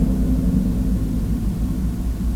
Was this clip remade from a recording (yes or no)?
no